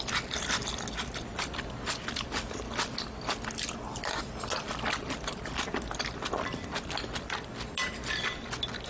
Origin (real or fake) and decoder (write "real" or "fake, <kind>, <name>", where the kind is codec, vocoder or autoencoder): real